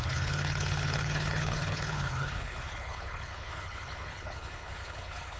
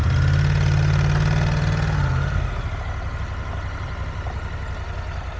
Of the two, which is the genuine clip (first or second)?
second